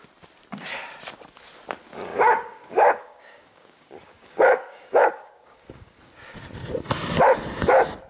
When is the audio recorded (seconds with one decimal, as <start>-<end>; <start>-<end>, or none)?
0.0-2.1; 6.0-8.1